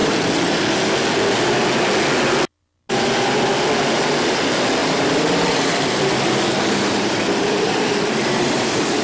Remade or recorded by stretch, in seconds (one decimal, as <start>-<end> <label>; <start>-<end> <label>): 0.0-0.6 remade; 0.6-4.8 recorded; 4.8-9.0 remade